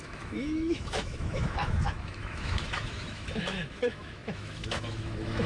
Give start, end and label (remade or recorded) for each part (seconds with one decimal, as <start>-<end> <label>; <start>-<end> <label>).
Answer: 0.0-5.5 remade